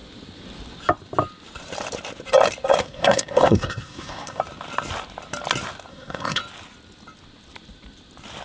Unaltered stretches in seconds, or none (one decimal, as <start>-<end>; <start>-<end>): 0.0-2.8; 4.4-5.9; 6.4-8.4